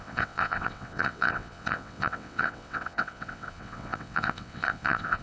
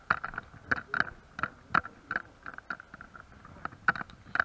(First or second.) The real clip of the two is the second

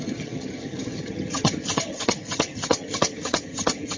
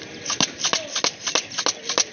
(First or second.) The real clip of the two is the second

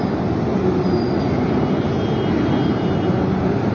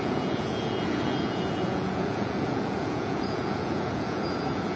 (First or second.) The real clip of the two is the first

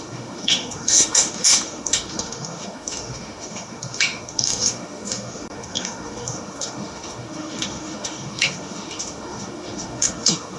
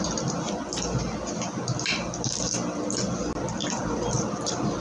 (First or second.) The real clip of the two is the second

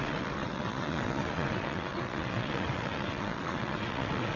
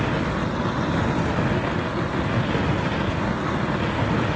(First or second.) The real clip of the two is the second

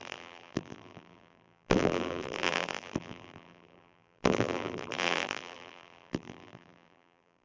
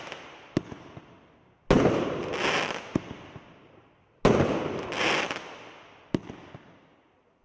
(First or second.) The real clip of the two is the second